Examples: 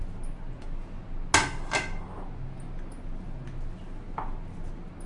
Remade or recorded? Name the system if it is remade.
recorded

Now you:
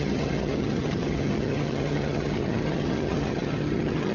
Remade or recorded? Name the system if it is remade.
remade, vocoder, HiFi-GAN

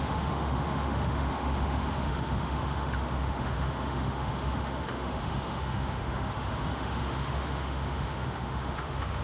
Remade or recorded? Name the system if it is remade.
remade, autoencoder, DAC-VAE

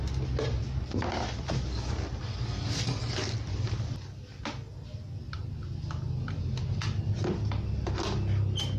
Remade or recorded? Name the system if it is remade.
recorded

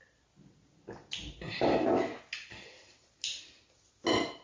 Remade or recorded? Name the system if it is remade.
recorded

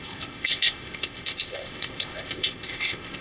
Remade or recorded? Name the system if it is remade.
remade, codec, ZipCodec